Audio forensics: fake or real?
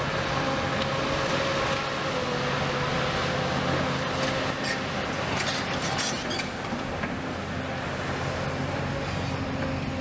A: real